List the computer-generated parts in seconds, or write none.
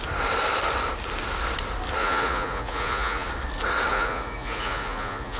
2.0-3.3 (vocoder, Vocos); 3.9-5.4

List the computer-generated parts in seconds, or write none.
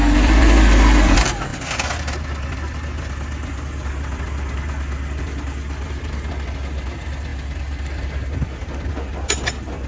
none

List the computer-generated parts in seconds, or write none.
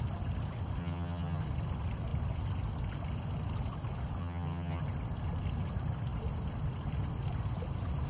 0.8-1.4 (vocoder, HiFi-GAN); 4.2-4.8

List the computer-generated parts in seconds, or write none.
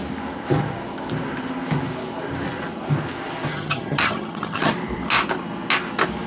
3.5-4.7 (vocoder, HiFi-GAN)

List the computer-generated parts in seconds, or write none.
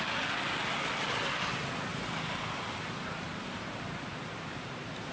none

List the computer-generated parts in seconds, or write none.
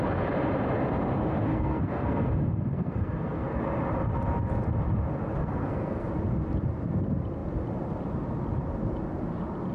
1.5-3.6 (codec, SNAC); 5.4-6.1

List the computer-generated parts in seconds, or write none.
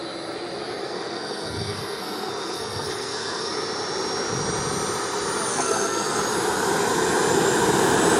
0.8-3.5 (codec, SNAC); 5.5-6.2